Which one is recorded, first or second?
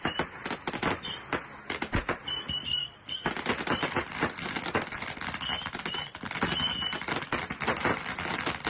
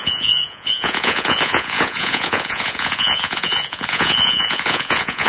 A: first